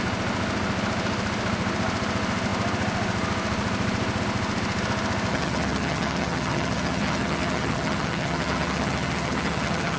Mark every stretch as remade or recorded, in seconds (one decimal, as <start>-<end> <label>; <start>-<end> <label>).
0.0-5.3 recorded; 5.3-10.0 remade